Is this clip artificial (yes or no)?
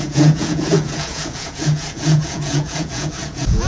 yes